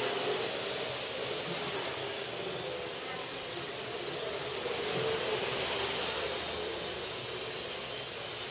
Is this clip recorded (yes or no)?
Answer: yes